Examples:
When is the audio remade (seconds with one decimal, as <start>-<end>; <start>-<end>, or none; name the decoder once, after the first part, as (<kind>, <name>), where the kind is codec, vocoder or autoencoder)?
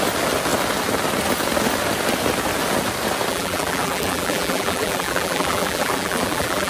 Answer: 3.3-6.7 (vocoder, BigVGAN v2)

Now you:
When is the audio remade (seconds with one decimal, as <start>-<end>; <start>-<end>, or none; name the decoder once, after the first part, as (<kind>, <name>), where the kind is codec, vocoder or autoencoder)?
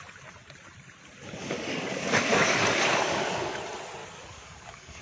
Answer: 1.2-3.6 (codec, DAC); 4.0-5.0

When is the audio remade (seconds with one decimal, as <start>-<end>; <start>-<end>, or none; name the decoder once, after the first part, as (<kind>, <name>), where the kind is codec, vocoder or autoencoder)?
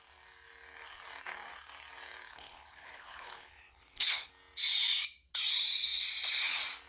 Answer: 2.3-4.3 (codec, HILCodec)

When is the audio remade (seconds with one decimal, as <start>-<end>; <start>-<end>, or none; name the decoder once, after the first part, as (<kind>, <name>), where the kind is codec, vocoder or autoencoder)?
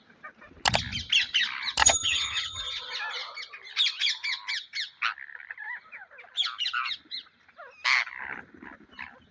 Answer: 1.8-2.6 (vocoder, HiFi-GAN)